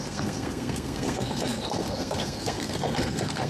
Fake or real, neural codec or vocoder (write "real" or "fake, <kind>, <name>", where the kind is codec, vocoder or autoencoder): fake, codec, SNAC